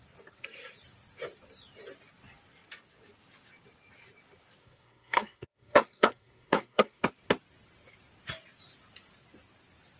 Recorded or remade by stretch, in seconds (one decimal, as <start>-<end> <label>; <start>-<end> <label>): 0.0-4.6 recorded; 4.6-7.1 remade; 7.1-10.0 recorded